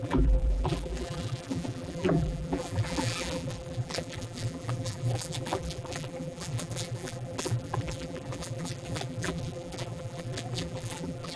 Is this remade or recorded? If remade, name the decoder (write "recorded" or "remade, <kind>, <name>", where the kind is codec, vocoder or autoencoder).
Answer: remade, vocoder, BigVGAN v2